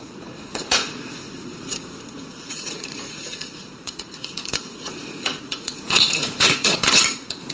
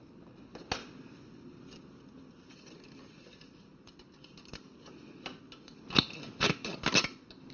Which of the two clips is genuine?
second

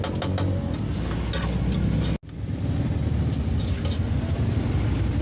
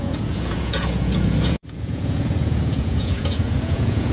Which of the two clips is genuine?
first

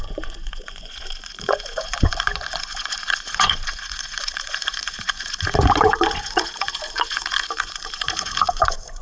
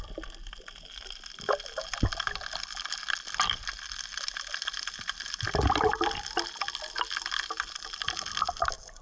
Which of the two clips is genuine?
second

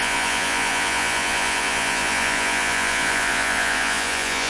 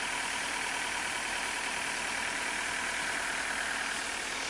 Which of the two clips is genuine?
second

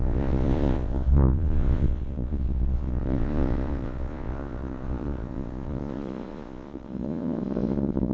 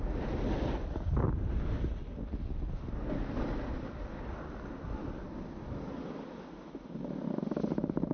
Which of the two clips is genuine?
second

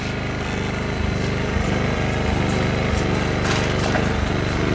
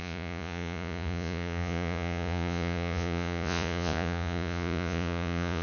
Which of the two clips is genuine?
first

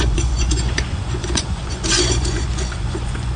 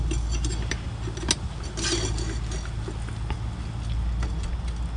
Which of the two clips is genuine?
second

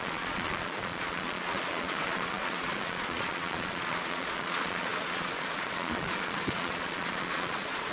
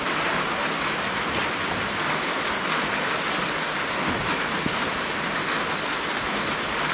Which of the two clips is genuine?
second